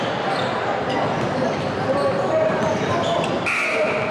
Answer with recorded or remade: recorded